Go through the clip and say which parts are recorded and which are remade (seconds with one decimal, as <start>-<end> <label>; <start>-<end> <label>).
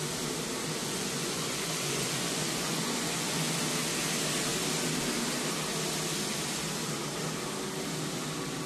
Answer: 0.0-0.8 recorded; 0.8-3.6 remade; 3.6-8.7 recorded